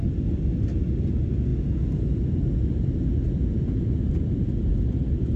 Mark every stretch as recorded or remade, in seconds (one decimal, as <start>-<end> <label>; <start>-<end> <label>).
0.0-5.4 recorded